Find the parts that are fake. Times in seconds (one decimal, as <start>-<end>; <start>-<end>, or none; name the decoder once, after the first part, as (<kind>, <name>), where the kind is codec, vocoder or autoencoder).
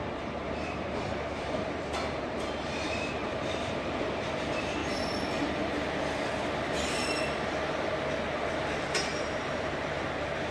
0.0-3.2 (vocoder, BigVGAN v2); 3.8-4.8; 9.2-10.5